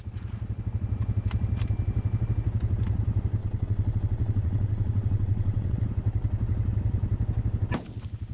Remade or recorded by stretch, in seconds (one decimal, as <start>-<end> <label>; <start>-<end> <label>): 0.0-3.4 recorded; 3.4-5.9 remade; 5.9-8.3 recorded